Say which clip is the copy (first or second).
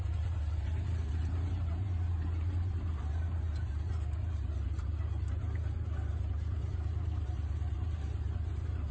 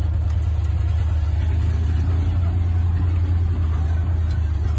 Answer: first